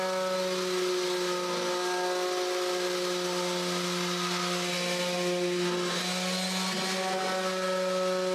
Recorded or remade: recorded